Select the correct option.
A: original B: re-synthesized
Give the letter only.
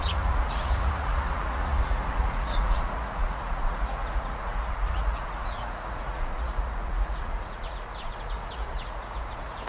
B